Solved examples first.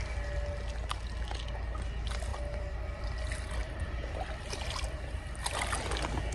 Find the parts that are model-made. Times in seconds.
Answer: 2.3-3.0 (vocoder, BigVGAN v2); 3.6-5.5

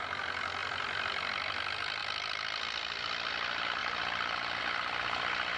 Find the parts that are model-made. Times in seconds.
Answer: 0.6-1.3 (vocoder, BigVGAN v2); 3.8-4.6

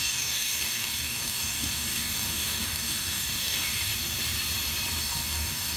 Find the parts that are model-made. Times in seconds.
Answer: 0.0-3.9 (codec, DAC); 5.0-5.8

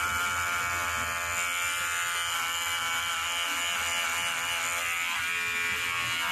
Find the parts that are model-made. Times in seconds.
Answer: none

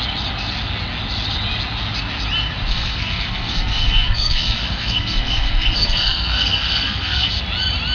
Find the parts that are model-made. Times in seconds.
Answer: 2.7-7.3 (codec, SNAC)

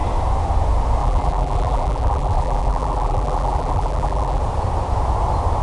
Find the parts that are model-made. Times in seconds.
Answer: 1.0-4.4 (vocoder, BigVGAN v2)